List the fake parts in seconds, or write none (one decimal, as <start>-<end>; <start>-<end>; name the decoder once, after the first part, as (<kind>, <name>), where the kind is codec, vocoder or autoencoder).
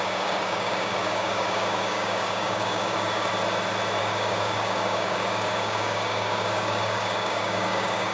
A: 0.0-3.3 (codec, DAC); 4.0-8.1